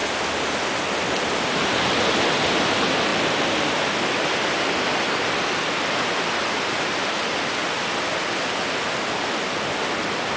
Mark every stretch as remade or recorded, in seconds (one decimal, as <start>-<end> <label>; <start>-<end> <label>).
0.0-10.4 recorded